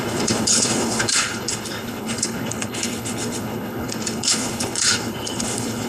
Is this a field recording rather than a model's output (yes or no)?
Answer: no